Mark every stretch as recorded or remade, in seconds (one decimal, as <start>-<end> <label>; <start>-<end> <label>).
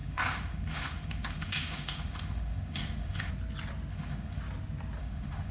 0.0-3.3 remade; 3.3-3.9 recorded; 3.9-4.4 remade; 4.4-5.0 recorded; 5.0-5.5 remade